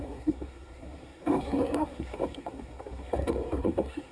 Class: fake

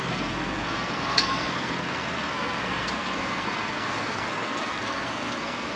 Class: fake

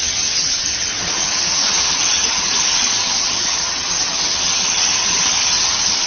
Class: fake